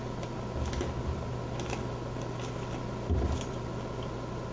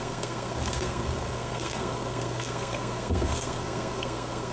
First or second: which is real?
first